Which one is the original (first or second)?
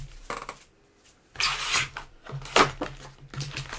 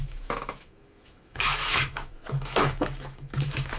first